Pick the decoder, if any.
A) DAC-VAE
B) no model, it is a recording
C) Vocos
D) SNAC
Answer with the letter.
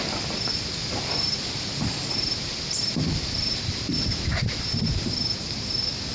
B